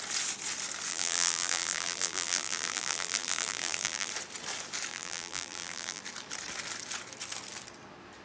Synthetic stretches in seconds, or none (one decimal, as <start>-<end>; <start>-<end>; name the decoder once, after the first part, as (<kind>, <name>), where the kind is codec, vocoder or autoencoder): 0.9-4.1 (vocoder, BigVGAN v2); 4.9-6.0